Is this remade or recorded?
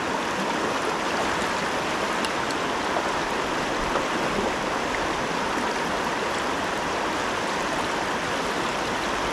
recorded